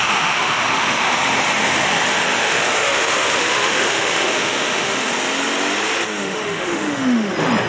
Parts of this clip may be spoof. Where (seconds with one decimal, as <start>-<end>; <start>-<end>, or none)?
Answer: 0.0-1.1; 2.4-5.1; 6.2-7.3